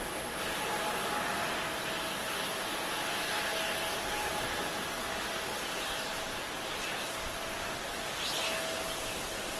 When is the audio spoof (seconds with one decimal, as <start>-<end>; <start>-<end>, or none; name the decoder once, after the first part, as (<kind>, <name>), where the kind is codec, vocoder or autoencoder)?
none